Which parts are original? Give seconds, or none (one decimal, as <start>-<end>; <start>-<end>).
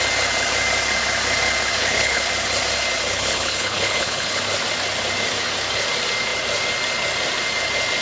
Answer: 0.0-1.8; 2.3-3.1; 4.4-8.0